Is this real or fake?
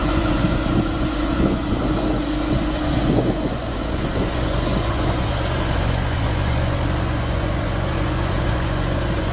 fake